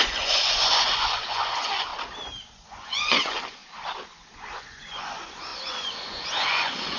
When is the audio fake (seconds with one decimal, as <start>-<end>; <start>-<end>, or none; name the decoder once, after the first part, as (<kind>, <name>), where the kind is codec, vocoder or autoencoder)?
0.0-1.9 (vocoder, Vocos); 2.5-3.6; 4.3-7.0

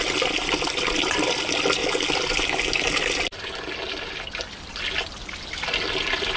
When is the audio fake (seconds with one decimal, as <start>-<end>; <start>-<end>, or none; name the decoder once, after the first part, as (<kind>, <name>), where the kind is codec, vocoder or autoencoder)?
none

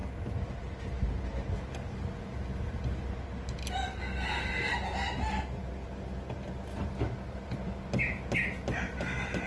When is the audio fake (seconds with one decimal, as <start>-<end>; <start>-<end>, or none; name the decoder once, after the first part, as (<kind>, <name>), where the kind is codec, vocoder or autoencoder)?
none

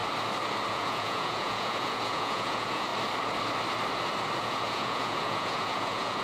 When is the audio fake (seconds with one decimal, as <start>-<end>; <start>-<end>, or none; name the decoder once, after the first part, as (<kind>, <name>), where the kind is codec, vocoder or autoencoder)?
0.7-2.9 (vocoder, Vocos); 4.4-6.2

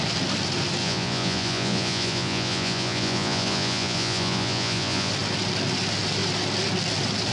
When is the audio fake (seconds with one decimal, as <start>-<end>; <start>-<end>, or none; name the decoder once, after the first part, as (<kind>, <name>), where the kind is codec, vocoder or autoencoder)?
0.8-5.1 (vocoder, Vocos)

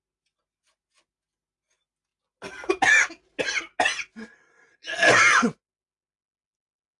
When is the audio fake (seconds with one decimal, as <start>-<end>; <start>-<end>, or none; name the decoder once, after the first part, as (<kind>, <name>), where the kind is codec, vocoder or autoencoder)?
none